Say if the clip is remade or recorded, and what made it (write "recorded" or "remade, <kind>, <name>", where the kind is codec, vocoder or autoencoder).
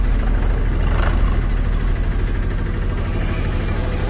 recorded